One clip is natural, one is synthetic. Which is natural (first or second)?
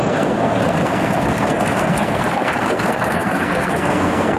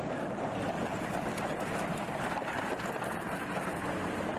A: second